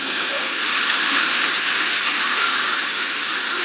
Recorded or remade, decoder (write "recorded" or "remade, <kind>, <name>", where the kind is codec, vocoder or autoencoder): remade, autoencoder, DAC-VAE